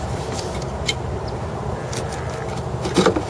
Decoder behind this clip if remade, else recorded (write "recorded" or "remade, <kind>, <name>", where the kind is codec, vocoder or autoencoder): recorded